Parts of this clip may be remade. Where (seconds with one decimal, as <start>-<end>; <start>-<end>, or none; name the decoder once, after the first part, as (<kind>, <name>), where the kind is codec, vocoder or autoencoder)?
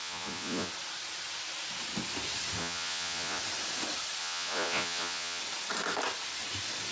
0.0-0.7 (vocoder, Vocos); 2.6-3.4; 4.2-5.4